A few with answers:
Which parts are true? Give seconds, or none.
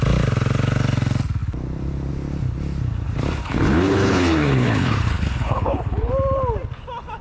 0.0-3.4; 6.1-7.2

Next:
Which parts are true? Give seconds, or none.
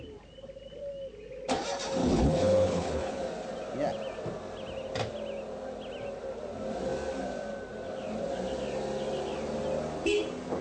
0.0-2.0; 3.2-10.6